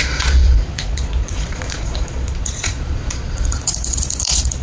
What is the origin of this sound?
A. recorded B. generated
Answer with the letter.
B